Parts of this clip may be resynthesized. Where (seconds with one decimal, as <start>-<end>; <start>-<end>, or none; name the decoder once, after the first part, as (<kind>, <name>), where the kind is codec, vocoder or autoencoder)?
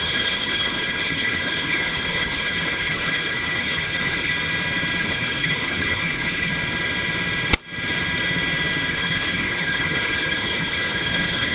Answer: 0.0-4.3 (codec, HILCodec); 5.0-6.5; 8.9-11.5